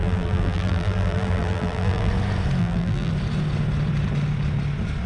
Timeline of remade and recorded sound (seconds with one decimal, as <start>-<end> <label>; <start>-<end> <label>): 0.0-2.1 remade; 2.1-2.6 recorded; 2.6-3.1 remade; 3.1-5.1 recorded